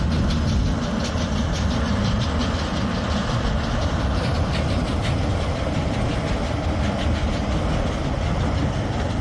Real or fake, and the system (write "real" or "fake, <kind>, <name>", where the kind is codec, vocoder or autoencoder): real